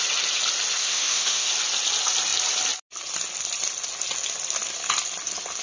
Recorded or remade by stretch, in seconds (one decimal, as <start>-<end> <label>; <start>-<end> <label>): 0.0-0.8 recorded; 0.8-1.5 remade; 1.5-5.6 recorded